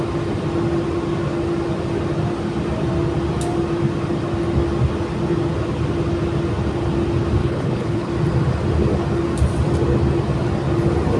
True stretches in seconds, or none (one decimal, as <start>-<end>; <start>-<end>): 0.0-7.4; 8.1-11.2